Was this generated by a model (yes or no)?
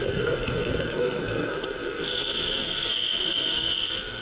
yes